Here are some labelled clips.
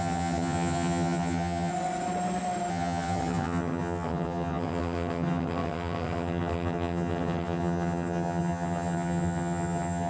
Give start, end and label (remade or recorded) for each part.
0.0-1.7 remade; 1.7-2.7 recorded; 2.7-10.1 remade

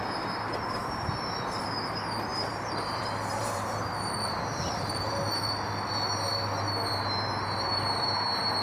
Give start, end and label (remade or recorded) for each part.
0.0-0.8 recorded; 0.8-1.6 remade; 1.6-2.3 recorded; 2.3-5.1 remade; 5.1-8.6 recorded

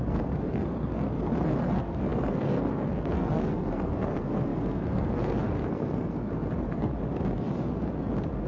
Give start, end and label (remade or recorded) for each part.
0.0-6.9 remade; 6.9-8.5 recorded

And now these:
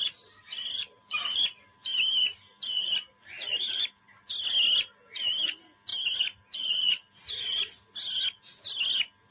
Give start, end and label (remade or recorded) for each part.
0.0-9.3 recorded